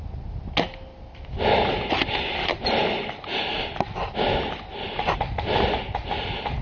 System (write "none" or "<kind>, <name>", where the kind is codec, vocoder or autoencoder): none